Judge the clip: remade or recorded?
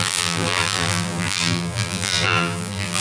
remade